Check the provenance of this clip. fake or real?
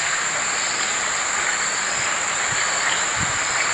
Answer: real